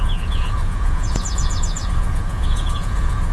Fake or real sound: fake